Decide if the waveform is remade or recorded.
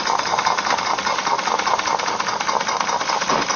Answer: recorded